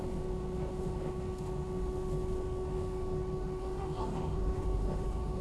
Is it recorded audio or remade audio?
remade